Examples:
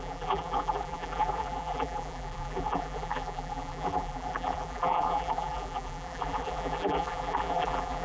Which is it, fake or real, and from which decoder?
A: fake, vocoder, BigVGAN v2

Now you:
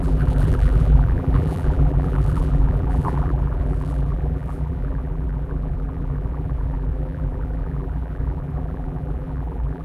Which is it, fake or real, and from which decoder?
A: fake, vocoder, BigVGAN v2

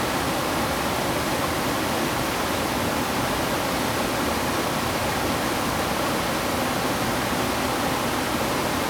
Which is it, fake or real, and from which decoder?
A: real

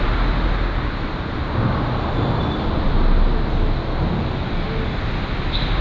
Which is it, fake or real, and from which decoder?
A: real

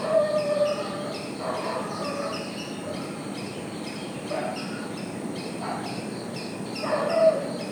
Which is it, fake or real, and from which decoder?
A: fake, vocoder, BigVGAN v2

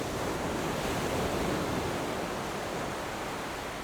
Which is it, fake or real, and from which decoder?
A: real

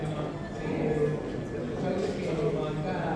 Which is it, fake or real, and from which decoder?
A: real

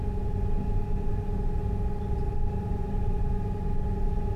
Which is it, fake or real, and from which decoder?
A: real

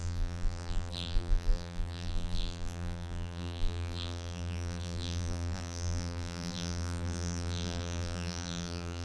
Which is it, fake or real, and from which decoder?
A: fake, vocoder, BigVGAN v2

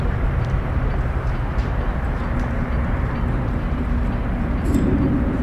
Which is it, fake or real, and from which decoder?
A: fake, vocoder, BigVGAN v2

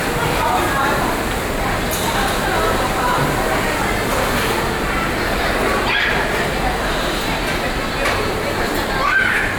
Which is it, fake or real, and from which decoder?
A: real